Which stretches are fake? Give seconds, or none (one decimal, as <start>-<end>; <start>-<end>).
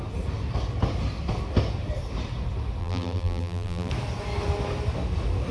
2.8-3.9